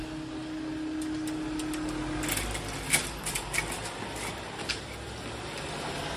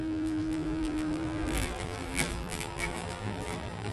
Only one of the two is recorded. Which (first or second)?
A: first